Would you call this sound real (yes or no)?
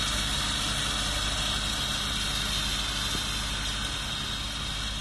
yes